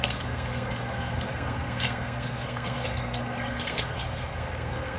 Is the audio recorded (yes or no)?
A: no